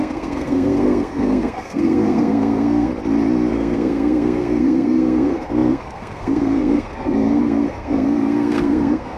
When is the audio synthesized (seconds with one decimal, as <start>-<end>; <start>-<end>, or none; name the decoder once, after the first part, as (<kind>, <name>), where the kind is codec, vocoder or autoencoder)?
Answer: 0.0-2.9 (codec, SNAC); 3.5-9.2